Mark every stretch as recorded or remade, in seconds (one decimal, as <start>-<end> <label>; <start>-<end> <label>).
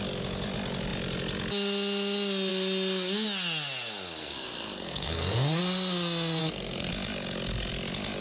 0.0-4.2 recorded; 4.2-5.6 remade; 5.6-6.4 recorded; 6.4-6.9 remade; 6.9-8.2 recorded